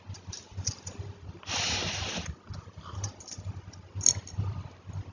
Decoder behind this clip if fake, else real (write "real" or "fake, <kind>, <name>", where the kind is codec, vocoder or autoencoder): real